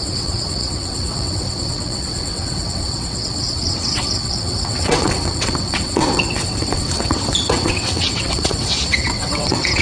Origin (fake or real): fake